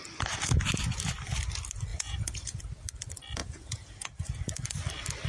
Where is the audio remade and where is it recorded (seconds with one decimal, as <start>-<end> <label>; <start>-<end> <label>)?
0.0-1.9 recorded; 1.9-2.6 remade; 2.6-3.4 recorded; 3.4-4.4 remade; 4.4-5.3 recorded